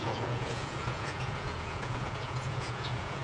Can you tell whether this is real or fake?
fake